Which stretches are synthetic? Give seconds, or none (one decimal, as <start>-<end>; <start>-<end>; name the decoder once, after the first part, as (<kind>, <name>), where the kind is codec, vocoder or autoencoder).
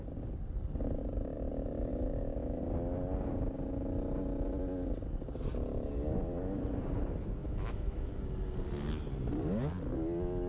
1.9-2.6 (autoencoder, DAC-VAE); 7.4-8.0